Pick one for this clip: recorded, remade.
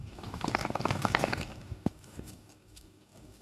remade